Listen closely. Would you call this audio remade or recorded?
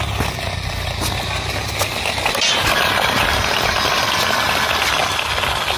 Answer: recorded